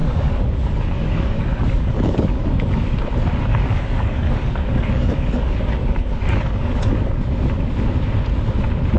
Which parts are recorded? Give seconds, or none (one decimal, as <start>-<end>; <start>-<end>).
2.9-3.5; 7.1-9.0